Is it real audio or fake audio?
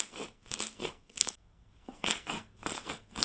fake